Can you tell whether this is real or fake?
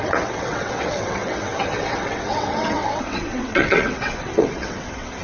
fake